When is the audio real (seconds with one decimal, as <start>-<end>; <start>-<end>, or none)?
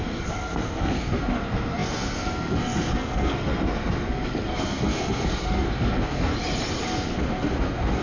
6.3-6.8